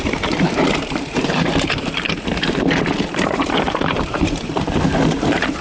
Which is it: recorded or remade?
remade